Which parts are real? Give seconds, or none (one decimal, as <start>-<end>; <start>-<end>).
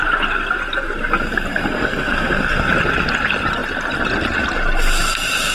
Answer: 0.0-1.5; 2.7-5.5